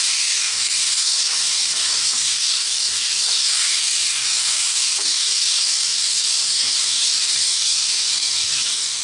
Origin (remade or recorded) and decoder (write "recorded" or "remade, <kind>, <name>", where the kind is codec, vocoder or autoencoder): remade, codec, DAC